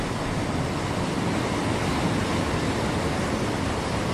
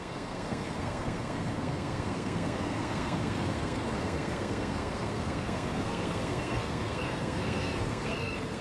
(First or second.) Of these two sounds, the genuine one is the first